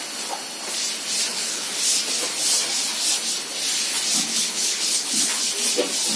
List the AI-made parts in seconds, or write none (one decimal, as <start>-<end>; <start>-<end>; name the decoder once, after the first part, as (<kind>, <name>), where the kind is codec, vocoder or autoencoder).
1.3-1.8 (codec, HILCodec); 4.3-5.5